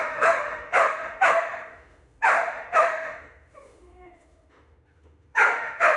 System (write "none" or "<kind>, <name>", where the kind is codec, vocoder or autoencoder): autoencoder, DAC-VAE